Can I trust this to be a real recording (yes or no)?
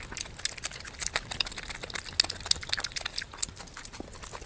yes